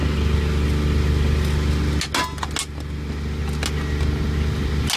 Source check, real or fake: real